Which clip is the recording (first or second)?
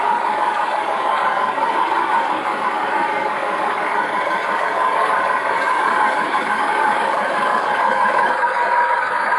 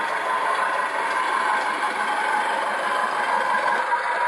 second